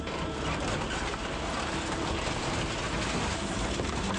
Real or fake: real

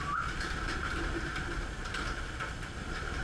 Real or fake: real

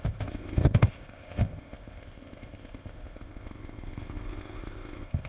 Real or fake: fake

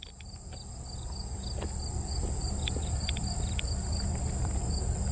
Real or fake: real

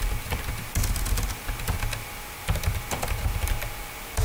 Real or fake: real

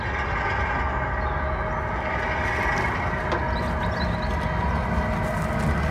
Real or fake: real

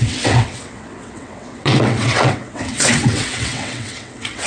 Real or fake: fake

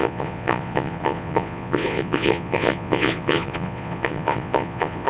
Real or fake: fake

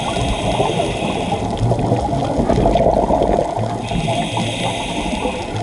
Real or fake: real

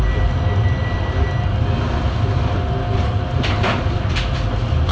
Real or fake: real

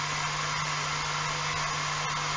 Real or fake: real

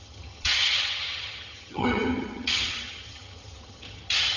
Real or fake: fake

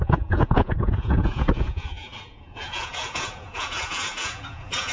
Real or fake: fake